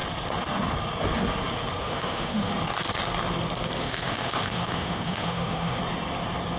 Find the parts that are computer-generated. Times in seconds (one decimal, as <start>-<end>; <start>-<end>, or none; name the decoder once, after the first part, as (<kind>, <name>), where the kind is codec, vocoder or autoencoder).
1.8-2.5 (autoencoder, DAC-VAE); 3.8-5.8